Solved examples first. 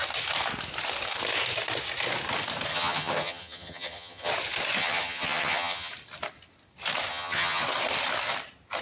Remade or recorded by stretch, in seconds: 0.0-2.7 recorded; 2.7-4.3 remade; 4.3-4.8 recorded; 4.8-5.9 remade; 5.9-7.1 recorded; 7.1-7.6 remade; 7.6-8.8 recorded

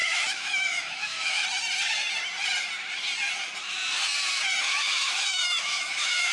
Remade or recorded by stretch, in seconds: 0.0-1.4 remade; 1.4-4.6 recorded; 4.6-6.3 remade

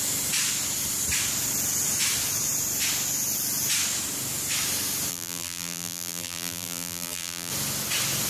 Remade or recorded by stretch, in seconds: 0.0-5.1 recorded; 5.1-7.5 remade; 7.5-8.3 recorded

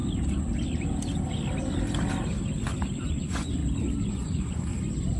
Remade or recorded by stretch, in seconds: 0.0-3.1 recorded; 3.1-3.6 remade; 3.6-4.1 recorded; 4.1-4.7 remade; 4.7-5.2 recorded

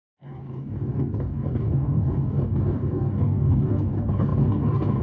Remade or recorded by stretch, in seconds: 0.0-5.0 remade

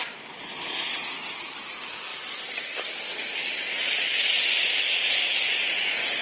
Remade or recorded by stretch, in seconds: 0.0-2.1 recorded; 2.1-4.7 remade; 4.7-6.2 recorded

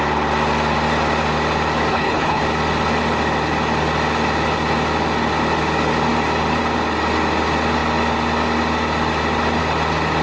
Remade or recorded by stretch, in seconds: 0.0-1.9 recorded; 1.9-2.4 remade; 2.4-10.2 recorded

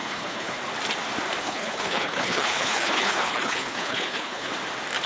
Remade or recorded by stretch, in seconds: 0.0-0.6 remade; 0.6-1.4 recorded; 1.4-4.5 remade; 4.5-5.1 recorded